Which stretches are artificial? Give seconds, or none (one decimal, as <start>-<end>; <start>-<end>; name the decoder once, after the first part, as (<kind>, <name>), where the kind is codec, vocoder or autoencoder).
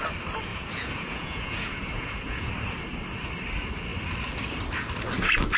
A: 0.5-2.5 (vocoder, Vocos)